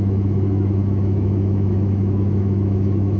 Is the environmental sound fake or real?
fake